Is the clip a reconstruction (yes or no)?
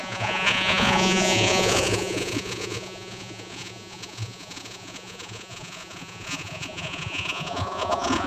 yes